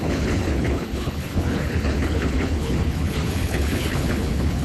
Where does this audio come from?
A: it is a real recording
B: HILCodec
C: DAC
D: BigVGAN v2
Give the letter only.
B